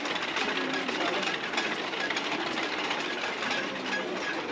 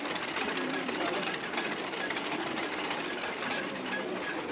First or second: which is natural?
first